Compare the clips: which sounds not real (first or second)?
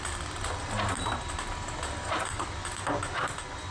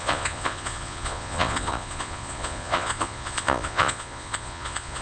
second